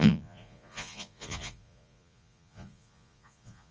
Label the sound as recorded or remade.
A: remade